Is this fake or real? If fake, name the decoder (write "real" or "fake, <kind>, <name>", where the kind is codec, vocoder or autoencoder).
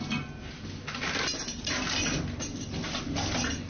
real